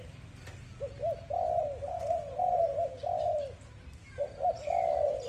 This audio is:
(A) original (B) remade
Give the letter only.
A